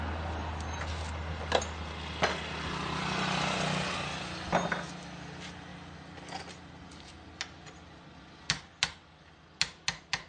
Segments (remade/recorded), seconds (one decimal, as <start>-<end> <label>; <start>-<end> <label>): 0.0-10.3 recorded